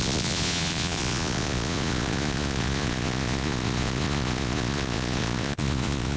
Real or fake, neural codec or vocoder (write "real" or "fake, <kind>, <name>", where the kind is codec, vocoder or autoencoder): fake, vocoder, Vocos